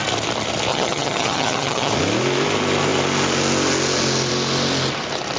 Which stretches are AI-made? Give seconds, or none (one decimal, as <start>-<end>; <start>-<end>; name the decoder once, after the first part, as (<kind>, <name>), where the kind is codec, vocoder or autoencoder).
0.7-1.9 (vocoder, HiFi-GAN)